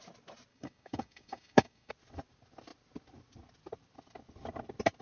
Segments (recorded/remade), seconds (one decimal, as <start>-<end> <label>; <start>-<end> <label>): 0.0-0.5 recorded; 0.5-1.9 remade; 1.9-5.0 recorded